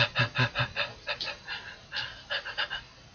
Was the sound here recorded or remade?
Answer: recorded